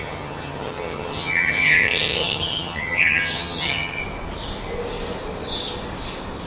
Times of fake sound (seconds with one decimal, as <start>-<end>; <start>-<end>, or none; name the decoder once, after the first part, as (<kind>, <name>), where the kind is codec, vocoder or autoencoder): 0.0-4.0 (vocoder, HiFi-GAN)